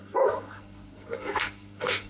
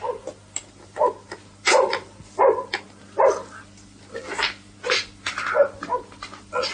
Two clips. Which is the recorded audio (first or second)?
second